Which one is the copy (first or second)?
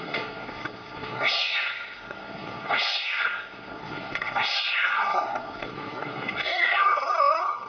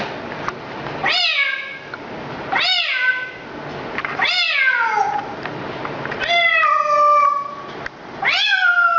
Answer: first